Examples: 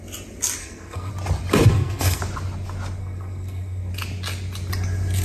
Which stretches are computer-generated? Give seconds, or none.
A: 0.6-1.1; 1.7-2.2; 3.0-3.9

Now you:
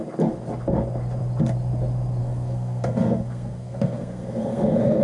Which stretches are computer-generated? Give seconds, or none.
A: 2.2-5.0

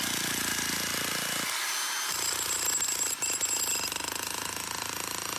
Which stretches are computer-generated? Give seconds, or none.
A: none

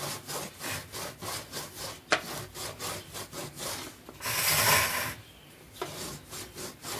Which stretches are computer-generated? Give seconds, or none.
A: none